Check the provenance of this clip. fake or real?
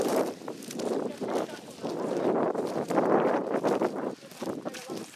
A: real